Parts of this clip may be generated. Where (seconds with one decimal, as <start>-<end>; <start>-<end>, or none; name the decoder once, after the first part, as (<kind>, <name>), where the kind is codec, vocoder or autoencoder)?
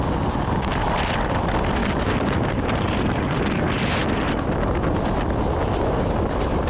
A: 1.8-3.4 (vocoder, BigVGAN v2)